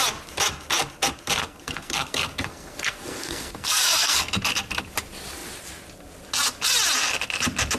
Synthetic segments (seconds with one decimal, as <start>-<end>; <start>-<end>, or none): 1.4-4.4